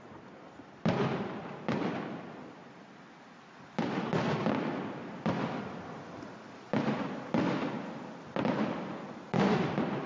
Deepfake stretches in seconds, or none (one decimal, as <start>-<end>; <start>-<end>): none